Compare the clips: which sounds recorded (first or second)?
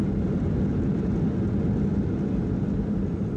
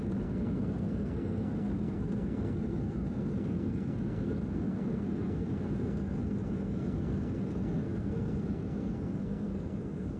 first